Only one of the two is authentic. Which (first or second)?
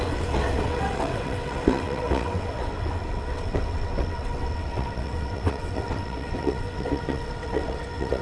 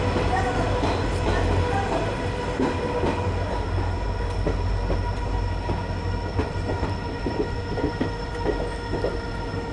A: second